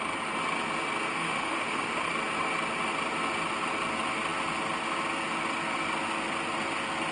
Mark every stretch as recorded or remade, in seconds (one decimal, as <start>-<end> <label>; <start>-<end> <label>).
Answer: 0.0-1.1 recorded; 1.1-2.1 remade; 2.1-7.1 recorded